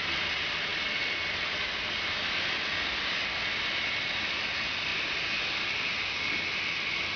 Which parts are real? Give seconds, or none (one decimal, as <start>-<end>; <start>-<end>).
0.0-7.2